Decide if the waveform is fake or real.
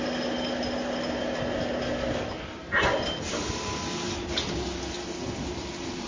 real